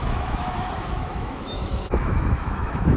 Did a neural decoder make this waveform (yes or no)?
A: yes